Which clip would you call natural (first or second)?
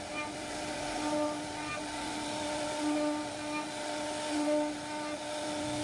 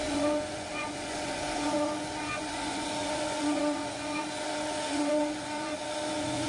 first